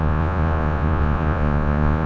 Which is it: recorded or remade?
remade